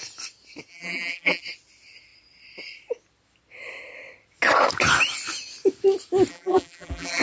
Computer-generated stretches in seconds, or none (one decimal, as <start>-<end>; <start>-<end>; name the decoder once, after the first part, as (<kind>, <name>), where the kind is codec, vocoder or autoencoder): 0.7-1.4 (vocoder, BigVGAN v2); 6.3-7.2